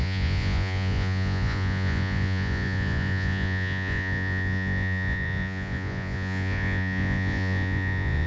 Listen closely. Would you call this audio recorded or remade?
remade